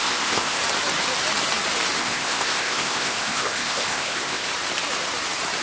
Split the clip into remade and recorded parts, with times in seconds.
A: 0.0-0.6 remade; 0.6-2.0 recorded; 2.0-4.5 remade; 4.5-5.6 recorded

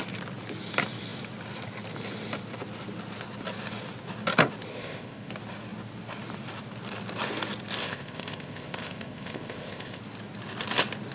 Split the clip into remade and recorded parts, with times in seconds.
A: 0.0-4.7 recorded; 4.7-5.3 remade; 5.3-7.8 recorded; 7.8-10.0 remade; 10.0-11.1 recorded

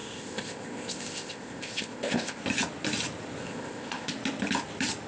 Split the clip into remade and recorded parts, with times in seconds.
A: 0.0-2.4 remade; 2.4-3.4 recorded; 3.4-4.1 remade; 4.1-5.1 recorded

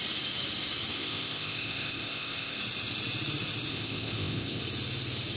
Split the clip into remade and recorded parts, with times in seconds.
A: 0.0-0.9 recorded; 0.9-2.6 remade; 2.6-3.7 recorded; 3.7-4.6 remade; 4.6-5.4 recorded

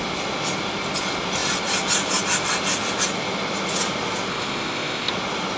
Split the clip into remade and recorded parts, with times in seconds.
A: 0.0-4.3 recorded; 4.3-5.1 remade; 5.1-5.6 recorded

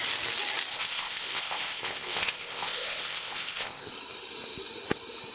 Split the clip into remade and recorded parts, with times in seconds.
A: 0.0-0.7 recorded; 0.7-3.9 remade; 3.9-5.3 recorded